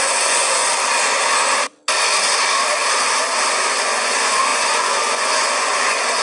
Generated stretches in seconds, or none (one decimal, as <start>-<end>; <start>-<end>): 0.0-0.6; 3.5-6.2